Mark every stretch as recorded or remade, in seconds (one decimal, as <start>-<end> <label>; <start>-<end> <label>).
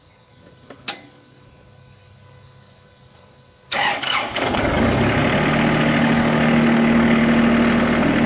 0.0-5.2 remade; 5.2-5.8 recorded; 5.8-7.2 remade; 7.2-8.3 recorded